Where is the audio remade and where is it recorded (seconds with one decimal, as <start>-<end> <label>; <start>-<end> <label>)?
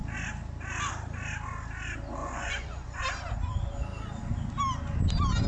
0.0-2.2 recorded; 2.2-3.0 remade; 3.0-5.5 recorded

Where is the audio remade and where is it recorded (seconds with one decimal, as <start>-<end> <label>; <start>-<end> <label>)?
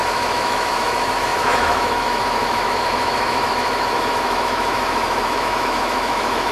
0.0-6.5 remade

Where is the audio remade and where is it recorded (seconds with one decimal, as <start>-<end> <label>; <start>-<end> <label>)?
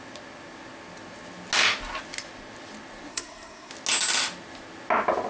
0.0-3.1 recorded; 3.1-3.7 remade; 3.7-5.3 recorded